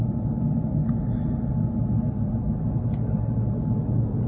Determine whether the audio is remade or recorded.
recorded